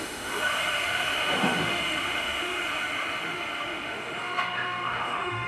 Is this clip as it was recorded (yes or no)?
no